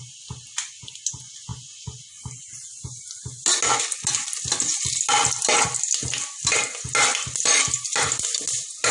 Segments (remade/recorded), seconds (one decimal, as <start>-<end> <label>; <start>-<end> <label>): 0.0-8.9 recorded